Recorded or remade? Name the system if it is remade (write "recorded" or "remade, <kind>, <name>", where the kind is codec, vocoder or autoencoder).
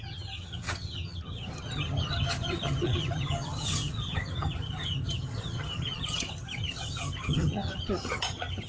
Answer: remade, vocoder, HiFi-GAN